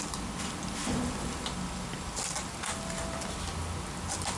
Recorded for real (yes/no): yes